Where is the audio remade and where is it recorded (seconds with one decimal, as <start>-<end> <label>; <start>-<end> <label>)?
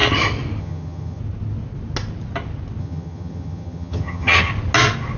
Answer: 0.0-0.6 recorded; 0.6-1.2 remade; 1.2-2.8 recorded; 2.8-4.5 remade; 4.5-5.2 recorded